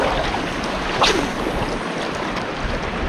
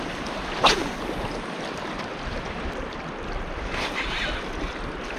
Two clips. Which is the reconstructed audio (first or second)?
second